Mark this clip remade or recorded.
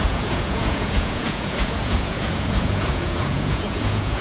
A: remade